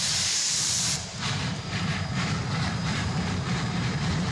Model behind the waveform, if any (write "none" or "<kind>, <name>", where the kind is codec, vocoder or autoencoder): vocoder, BigVGAN v2